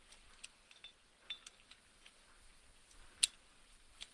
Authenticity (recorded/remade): recorded